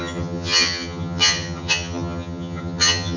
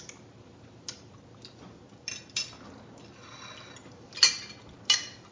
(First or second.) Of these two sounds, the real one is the second